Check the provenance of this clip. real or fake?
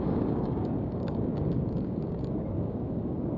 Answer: fake